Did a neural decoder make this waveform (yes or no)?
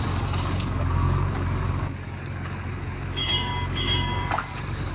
yes